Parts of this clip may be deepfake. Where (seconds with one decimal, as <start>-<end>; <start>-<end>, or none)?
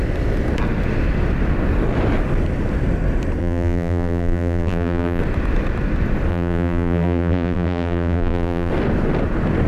3.4-5.2; 6.3-8.7